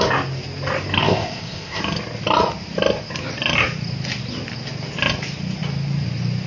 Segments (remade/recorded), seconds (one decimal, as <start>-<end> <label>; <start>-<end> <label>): 0.0-1.0 recorded; 1.0-1.8 remade; 1.8-6.5 recorded